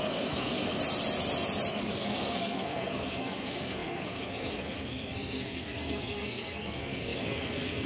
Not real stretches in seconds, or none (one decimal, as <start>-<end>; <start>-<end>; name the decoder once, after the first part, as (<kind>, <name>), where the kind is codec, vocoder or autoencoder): 0.0-0.8 (codec, SNAC); 1.7-7.9